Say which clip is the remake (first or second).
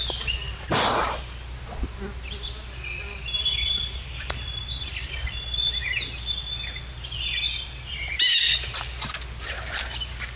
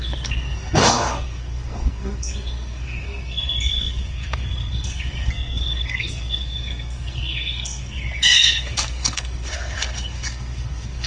second